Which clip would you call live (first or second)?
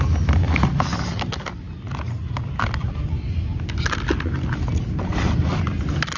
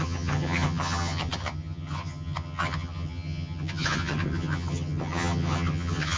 first